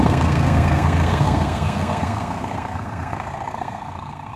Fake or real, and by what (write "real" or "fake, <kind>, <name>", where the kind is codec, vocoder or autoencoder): fake, codec, SNAC